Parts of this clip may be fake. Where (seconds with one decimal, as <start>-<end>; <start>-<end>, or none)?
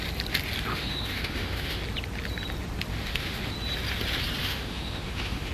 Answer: 0.7-1.8; 2.9-3.5; 4.4-5.5